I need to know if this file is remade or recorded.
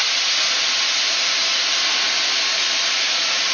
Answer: recorded